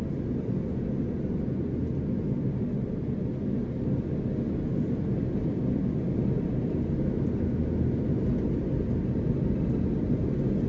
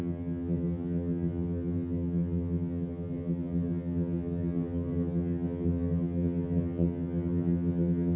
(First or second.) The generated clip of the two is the second